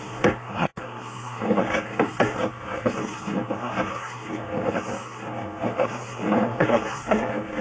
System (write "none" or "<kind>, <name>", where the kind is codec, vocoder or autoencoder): codec, SNAC